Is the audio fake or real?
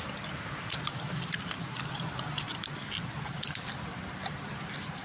real